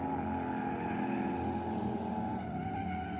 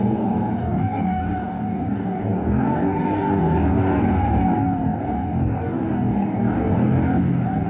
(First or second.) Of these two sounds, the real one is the first